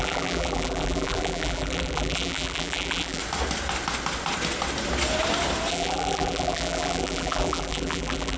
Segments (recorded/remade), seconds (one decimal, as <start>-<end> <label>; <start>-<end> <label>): 0.0-3.2 remade; 3.2-5.7 recorded; 5.7-8.4 remade